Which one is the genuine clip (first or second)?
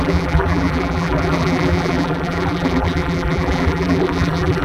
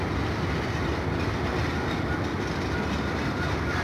second